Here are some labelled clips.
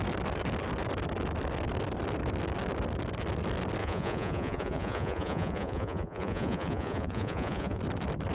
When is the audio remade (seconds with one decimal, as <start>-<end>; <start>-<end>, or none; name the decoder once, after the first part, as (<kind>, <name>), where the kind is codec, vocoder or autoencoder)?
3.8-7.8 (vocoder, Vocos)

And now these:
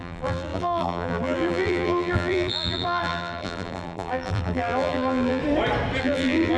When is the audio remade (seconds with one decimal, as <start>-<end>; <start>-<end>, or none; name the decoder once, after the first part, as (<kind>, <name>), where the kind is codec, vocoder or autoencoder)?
0.0-5.4 (vocoder, BigVGAN v2); 6.0-6.6

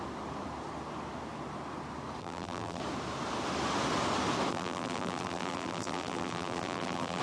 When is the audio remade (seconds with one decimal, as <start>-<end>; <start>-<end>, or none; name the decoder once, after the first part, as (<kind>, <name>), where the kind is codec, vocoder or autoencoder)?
2.2-2.8 (vocoder, BigVGAN v2); 4.5-7.2

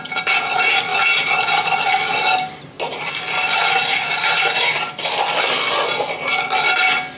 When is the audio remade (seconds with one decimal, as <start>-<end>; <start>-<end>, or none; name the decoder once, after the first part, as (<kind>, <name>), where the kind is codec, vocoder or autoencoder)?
none